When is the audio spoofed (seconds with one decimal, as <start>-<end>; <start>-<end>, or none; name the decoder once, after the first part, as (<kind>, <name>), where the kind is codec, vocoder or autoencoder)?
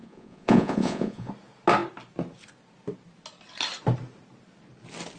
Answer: 0.0-1.3 (vocoder, Vocos)